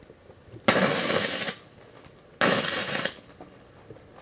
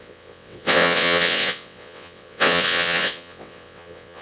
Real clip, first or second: first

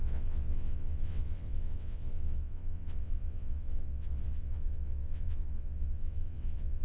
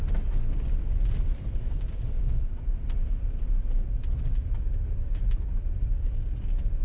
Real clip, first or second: second